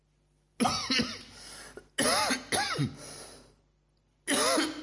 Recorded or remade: recorded